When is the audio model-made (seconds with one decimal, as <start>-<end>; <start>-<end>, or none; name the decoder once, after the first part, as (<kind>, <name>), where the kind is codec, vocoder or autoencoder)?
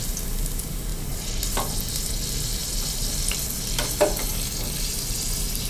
0.9-1.4 (vocoder, BigVGAN v2)